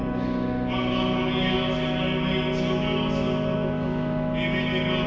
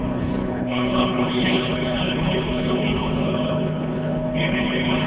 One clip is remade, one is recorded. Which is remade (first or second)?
second